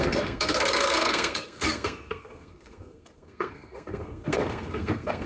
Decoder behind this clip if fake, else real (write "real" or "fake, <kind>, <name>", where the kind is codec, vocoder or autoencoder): fake, codec, SNAC